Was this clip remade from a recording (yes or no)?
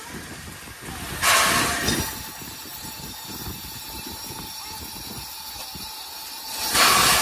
no